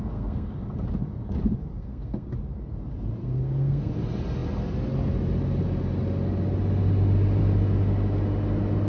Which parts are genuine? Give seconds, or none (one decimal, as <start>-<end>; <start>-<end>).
0.5-1.7; 2.3-3.2; 3.9-8.9